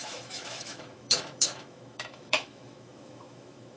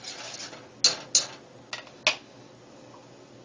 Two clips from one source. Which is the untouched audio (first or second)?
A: second